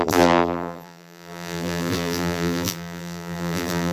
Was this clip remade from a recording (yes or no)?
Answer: yes